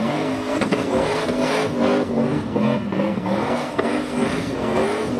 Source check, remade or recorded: remade